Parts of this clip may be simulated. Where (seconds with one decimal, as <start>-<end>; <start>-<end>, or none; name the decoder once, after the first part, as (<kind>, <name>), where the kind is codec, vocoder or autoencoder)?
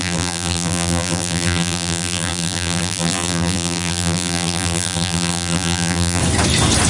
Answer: 0.0-6.2 (vocoder, BigVGAN v2)